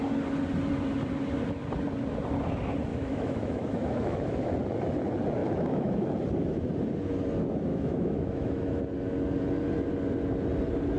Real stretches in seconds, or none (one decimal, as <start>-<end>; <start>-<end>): 0.0-2.9; 4.5-5.4; 6.0-7.7; 8.8-11.0

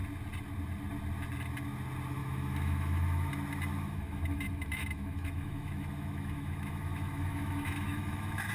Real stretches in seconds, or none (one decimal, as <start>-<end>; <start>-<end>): 0.0-2.2; 3.3-3.7

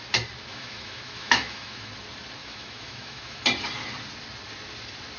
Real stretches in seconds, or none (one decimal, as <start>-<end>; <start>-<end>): 0.0-0.5; 1.9-2.4; 3.4-5.2

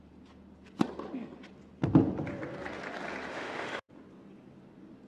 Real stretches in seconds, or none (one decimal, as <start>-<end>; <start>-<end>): 0.0-3.3; 3.9-5.1

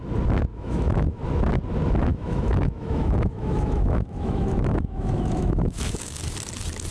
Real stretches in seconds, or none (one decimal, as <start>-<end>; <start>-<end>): 0.0-0.5; 1.2-2.1; 6.2-6.9

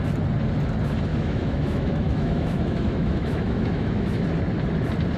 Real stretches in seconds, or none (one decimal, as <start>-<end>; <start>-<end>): 0.0-1.1; 4.2-5.2

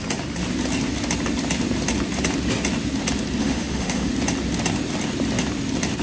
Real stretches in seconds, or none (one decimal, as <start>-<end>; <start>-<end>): 0.0-3.4; 4.1-6.0